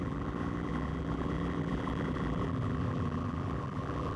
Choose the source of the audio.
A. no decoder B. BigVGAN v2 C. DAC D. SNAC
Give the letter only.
B